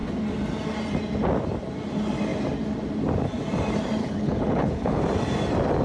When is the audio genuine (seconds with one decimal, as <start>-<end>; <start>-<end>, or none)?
0.0-4.0; 5.0-5.8